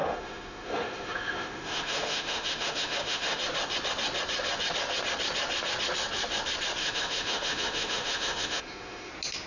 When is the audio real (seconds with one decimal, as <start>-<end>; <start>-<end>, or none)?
3.4-6.8; 9.1-9.5